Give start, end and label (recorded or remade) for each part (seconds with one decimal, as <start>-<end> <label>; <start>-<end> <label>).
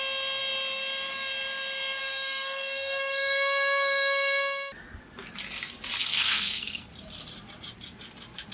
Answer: 0.0-2.0 recorded; 2.0-4.7 remade; 4.7-6.0 recorded; 6.0-6.9 remade; 6.9-8.5 recorded